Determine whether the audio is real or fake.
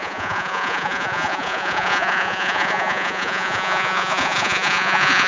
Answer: fake